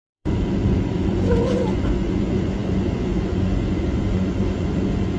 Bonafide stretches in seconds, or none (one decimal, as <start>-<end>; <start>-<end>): none